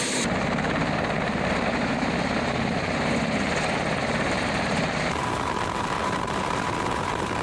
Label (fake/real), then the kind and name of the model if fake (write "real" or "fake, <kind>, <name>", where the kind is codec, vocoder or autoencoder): fake, vocoder, BigVGAN v2